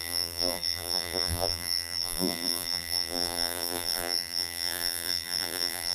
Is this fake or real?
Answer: fake